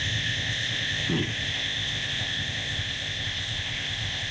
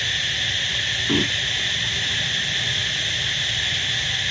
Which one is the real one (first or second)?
second